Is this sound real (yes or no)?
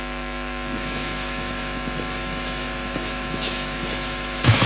no